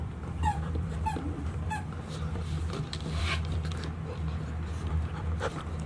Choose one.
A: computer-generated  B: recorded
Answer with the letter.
A